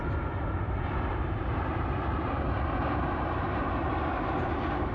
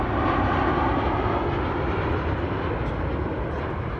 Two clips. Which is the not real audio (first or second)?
first